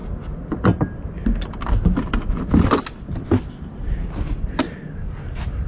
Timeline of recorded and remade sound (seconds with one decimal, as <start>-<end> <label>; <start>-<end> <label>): 0.0-5.7 recorded